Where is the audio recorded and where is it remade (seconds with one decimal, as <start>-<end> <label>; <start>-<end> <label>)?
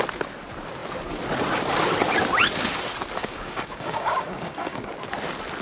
0.0-3.2 recorded; 3.2-4.9 remade; 4.9-5.6 recorded